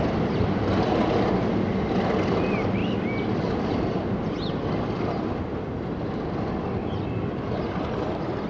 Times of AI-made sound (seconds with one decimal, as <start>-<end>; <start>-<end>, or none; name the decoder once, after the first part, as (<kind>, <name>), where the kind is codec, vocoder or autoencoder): none